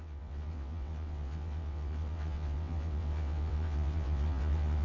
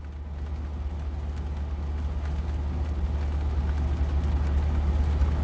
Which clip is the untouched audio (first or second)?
second